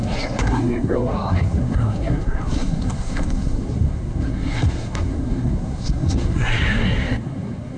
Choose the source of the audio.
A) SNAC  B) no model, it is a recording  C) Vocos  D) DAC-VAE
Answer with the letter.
A